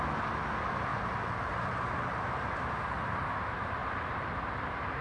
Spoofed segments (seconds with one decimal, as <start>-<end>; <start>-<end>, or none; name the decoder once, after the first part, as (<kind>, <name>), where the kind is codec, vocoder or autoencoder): 0.9-3.1 (vocoder, BigVGAN v2)